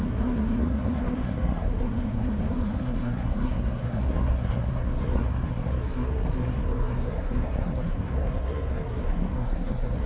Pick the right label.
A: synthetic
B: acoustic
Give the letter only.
A